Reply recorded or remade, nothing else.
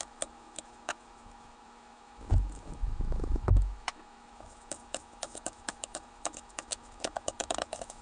remade